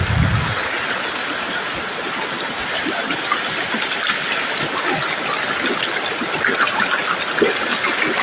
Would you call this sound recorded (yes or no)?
yes